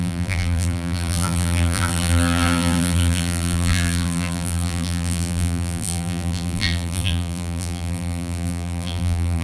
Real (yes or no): no